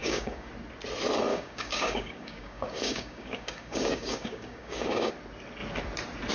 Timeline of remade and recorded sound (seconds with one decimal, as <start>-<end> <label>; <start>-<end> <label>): 0.0-0.5 remade; 0.5-1.3 recorded; 1.3-5.1 remade; 5.1-6.3 recorded